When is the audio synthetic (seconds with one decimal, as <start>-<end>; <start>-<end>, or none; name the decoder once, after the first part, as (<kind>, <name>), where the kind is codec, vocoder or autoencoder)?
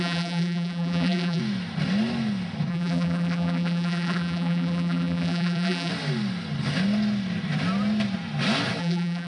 0.0-1.4 (vocoder, BigVGAN v2); 2.7-5.9; 8.8-9.3